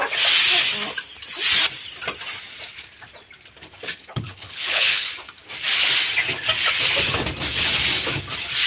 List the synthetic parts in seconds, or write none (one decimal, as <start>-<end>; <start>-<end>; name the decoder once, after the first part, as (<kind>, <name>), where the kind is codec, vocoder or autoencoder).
4.0-5.1 (codec, HILCodec)